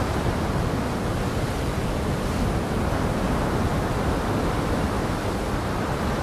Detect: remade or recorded recorded